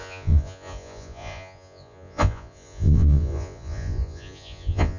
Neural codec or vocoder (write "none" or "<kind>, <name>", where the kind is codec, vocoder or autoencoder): vocoder, Vocos